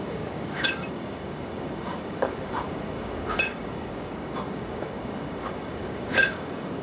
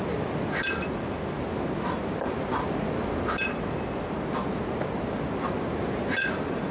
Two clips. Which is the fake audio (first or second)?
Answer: first